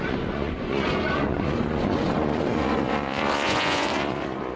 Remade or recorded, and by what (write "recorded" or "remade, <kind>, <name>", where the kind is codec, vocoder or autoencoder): remade, vocoder, Vocos